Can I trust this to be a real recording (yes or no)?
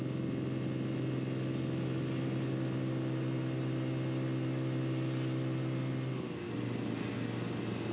yes